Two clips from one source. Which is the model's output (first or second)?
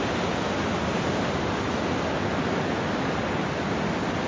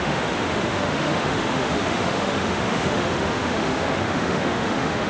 second